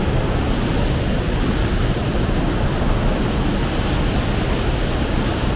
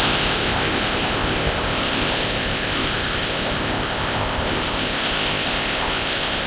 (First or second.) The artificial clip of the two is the second